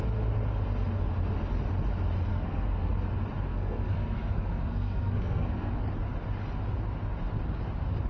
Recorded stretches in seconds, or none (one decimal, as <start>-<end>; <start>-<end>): 0.0-2.3; 2.9-3.5; 5.7-8.1